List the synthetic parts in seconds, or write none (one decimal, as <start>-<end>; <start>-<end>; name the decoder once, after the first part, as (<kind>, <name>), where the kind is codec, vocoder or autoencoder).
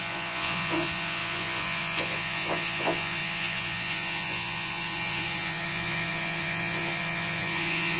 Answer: 0.0-8.0 (vocoder, Vocos)